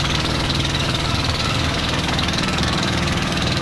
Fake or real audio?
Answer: fake